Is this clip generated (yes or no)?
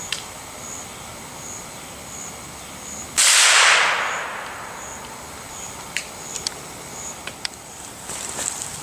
yes